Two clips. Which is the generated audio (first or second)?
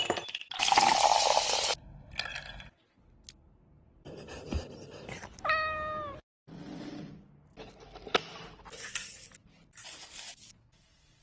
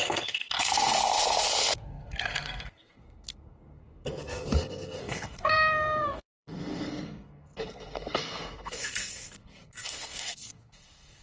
second